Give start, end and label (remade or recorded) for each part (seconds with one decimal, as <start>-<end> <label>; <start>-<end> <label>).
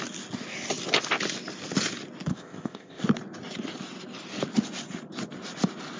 0.0-2.3 recorded; 2.3-3.0 remade; 3.0-6.0 recorded